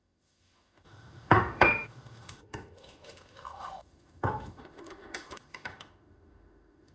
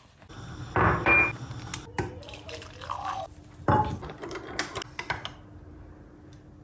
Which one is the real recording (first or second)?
second